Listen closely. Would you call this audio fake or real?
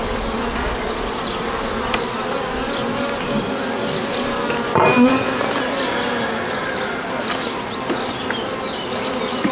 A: real